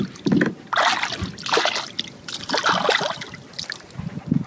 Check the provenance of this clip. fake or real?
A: real